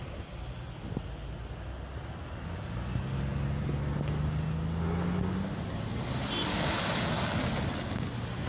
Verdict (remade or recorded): recorded